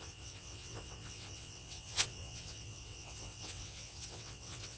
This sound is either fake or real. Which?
fake